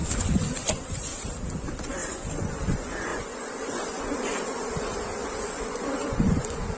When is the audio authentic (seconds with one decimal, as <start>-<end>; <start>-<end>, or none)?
1.1-1.6